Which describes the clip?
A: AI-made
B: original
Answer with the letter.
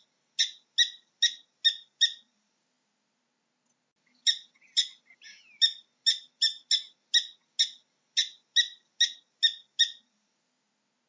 B